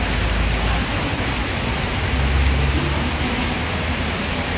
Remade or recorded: recorded